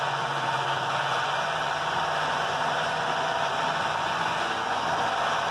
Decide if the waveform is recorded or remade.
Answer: remade